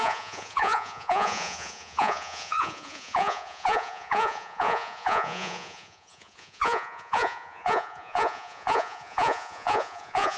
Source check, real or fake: fake